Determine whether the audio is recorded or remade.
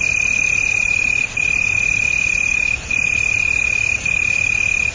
recorded